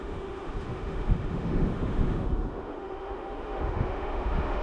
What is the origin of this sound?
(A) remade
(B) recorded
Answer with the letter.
A